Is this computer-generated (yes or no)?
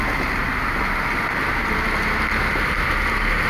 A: no